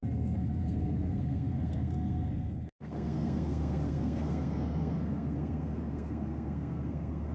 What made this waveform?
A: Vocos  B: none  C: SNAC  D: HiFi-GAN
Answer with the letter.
C